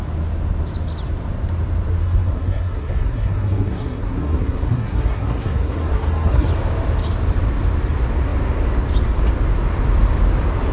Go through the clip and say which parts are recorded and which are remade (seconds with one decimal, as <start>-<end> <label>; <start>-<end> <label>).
0.0-2.0 recorded; 2.0-6.5 remade; 6.5-10.7 recorded